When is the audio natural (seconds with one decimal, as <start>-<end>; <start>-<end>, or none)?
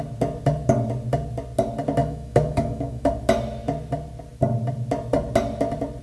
0.0-2.0; 3.1-6.0